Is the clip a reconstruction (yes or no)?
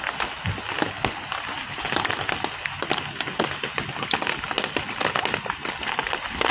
no